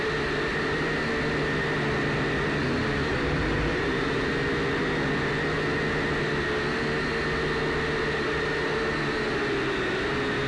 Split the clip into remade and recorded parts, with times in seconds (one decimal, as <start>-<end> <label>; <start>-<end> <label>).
0.0-2.6 recorded; 2.6-4.3 remade; 4.3-10.5 recorded